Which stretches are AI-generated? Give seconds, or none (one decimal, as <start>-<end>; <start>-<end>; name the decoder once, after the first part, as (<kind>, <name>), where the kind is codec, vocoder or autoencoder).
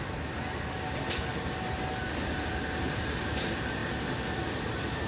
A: none